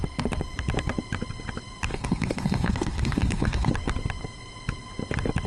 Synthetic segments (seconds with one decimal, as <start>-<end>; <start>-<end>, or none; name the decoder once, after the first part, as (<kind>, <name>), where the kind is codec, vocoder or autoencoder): 1.9-3.7 (codec, SNAC)